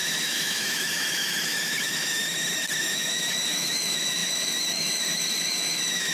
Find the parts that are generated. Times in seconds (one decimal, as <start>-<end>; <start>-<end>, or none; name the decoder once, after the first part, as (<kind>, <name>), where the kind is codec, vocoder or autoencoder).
0.0-2.2 (autoencoder, DAC-VAE); 2.8-6.1